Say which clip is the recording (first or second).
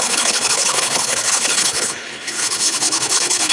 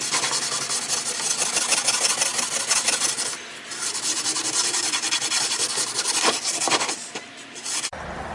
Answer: second